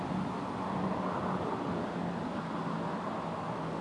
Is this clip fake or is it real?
real